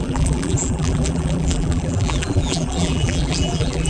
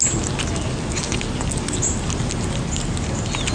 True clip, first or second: second